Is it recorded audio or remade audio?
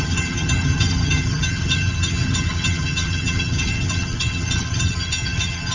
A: remade